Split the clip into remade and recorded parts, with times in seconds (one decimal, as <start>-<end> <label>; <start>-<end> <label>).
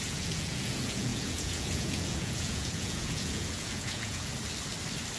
0.0-4.3 remade; 4.3-5.2 recorded